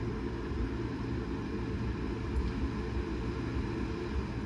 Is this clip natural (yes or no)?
yes